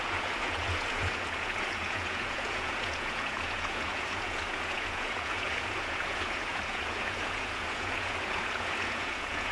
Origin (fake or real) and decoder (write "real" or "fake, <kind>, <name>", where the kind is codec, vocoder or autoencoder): fake, vocoder, Vocos